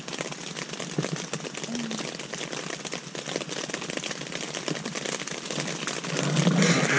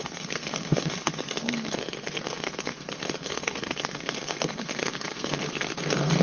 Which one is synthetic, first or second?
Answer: second